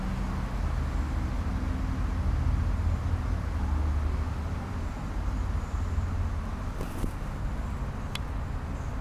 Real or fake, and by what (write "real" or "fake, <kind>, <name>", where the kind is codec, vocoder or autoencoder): real